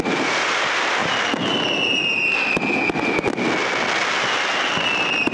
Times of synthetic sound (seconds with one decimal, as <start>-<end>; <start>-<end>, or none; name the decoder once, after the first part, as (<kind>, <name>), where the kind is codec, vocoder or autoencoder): none